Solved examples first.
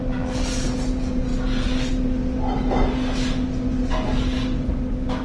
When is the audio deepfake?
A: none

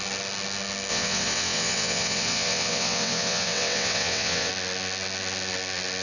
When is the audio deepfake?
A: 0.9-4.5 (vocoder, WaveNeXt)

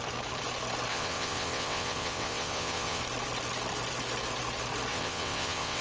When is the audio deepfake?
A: 0.9-3.0 (vocoder, WaveNeXt); 4.9-5.8